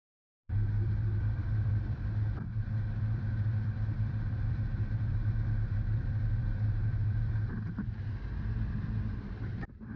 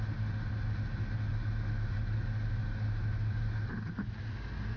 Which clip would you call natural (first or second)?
second